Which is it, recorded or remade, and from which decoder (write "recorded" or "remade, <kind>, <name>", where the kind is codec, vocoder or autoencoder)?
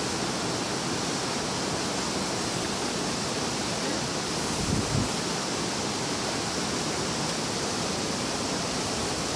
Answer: recorded